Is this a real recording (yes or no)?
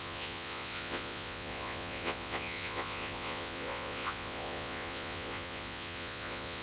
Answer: no